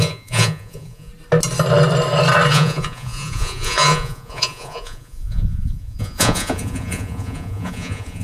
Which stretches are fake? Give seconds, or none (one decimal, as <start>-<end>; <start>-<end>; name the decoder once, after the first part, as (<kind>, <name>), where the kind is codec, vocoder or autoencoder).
0.0-1.1 (vocoder, Vocos); 2.5-8.2